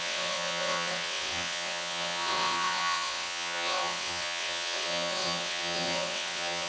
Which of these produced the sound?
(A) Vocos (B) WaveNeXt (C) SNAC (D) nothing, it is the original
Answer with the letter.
B